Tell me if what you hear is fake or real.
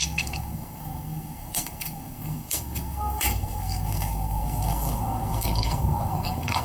fake